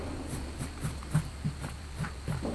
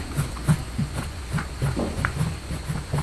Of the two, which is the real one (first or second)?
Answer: first